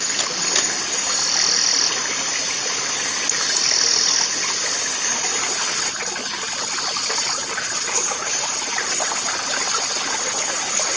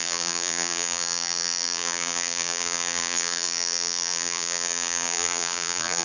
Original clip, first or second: first